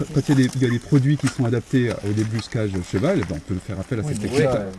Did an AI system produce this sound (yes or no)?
no